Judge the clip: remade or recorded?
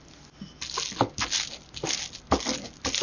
recorded